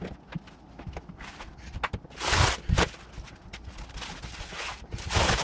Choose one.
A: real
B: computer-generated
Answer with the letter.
A